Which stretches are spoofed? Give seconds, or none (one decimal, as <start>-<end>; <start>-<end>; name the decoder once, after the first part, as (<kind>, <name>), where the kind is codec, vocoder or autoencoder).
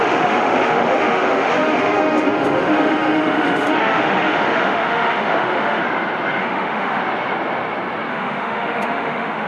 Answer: 0.0-5.8 (autoencoder, DAC-VAE); 6.4-7.0; 8.1-9.5